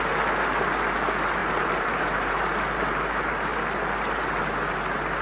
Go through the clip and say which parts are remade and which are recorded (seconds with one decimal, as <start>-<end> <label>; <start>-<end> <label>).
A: 0.0-1.4 recorded; 1.4-2.4 remade; 2.4-5.2 recorded